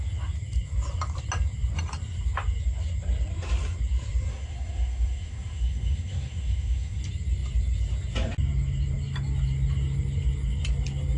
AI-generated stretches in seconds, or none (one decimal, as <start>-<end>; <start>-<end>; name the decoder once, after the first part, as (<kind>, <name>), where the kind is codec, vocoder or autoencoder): 4.3-7.0 (autoencoder, DAC-VAE)